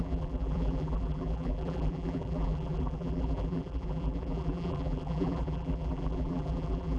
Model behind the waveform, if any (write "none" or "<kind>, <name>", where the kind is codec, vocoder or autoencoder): vocoder, BigVGAN v2